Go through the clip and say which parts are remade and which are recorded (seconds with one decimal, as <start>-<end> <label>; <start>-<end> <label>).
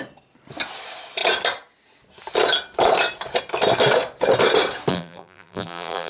0.0-4.9 recorded; 4.9-6.1 remade